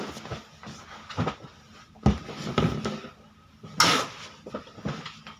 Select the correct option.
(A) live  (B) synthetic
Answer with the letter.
A